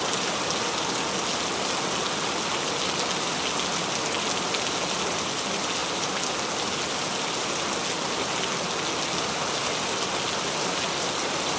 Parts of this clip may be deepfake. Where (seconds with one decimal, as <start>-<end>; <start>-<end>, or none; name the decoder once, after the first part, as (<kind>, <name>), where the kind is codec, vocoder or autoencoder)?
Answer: none